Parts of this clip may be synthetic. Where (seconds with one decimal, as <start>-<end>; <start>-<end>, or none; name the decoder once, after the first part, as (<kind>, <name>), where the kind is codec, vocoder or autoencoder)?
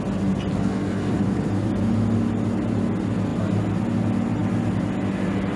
0.6-1.1 (codec, SNAC)